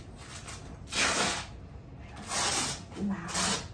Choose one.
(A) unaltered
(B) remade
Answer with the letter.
A